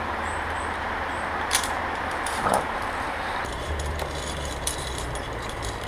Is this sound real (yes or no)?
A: no